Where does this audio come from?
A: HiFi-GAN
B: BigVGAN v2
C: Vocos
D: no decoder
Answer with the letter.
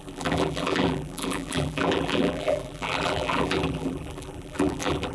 B